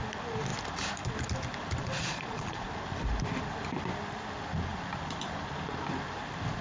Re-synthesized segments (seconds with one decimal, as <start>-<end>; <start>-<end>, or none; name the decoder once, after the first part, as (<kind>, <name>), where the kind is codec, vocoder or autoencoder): 1.8-2.7 (vocoder, Vocos)